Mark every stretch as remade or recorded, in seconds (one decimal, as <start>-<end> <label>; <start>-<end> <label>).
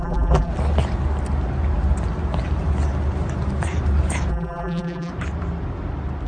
0.0-0.5 remade; 0.5-4.3 recorded; 4.3-5.1 remade; 5.1-6.3 recorded